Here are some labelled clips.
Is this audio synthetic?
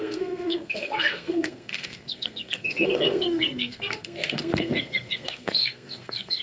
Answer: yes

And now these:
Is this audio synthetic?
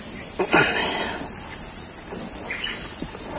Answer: no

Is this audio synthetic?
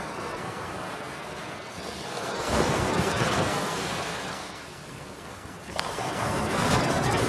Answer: yes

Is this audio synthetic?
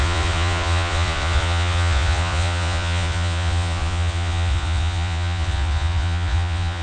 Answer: yes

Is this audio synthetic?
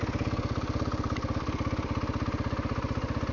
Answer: no